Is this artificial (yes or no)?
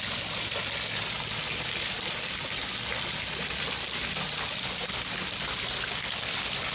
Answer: no